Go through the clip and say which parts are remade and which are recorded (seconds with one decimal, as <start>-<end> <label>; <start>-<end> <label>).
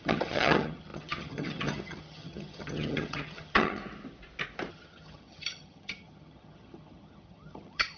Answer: 0.0-3.8 remade; 3.8-4.7 recorded; 4.7-8.0 remade